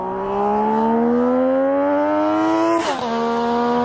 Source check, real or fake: real